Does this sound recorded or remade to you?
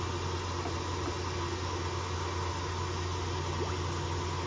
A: recorded